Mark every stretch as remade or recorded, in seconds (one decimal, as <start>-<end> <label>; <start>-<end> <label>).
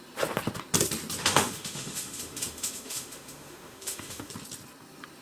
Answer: 0.0-1.2 recorded; 1.2-4.3 remade; 4.3-5.2 recorded